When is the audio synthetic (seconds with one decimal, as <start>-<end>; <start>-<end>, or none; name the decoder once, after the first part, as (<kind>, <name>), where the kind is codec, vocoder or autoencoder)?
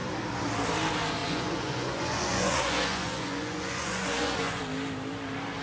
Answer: 1.2-4.6 (vocoder, Vocos)